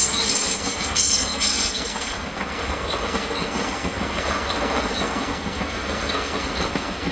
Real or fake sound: fake